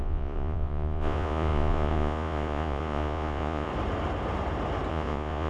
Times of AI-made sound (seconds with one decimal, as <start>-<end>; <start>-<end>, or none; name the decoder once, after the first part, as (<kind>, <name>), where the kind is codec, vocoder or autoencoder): 0.0-3.7 (vocoder, Vocos); 4.9-5.5